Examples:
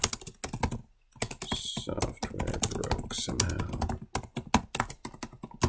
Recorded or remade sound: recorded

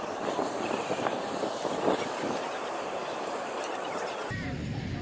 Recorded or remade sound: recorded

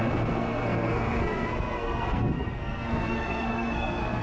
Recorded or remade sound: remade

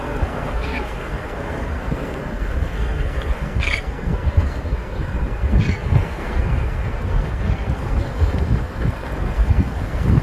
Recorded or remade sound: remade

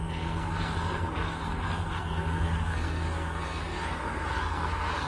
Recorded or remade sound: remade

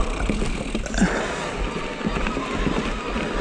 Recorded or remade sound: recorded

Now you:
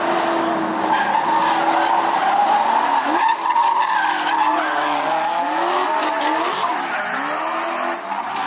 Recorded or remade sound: recorded